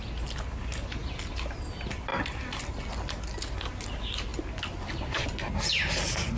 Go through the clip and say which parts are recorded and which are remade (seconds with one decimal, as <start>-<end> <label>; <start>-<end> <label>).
0.0-6.4 recorded